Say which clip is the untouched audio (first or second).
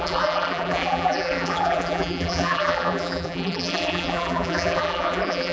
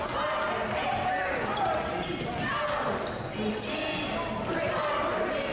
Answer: second